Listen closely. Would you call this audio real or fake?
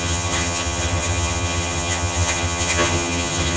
fake